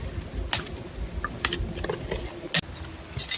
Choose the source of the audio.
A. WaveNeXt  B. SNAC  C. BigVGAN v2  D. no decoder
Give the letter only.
D